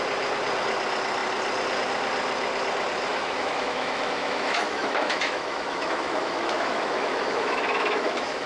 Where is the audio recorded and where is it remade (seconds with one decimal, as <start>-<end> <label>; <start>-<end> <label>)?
0.0-3.1 recorded; 3.1-8.5 remade